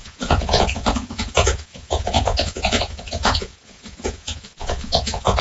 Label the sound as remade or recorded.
remade